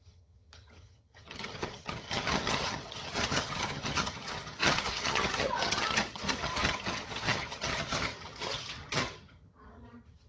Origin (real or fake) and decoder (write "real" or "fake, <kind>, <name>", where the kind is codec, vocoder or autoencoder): fake, vocoder, HiFi-GAN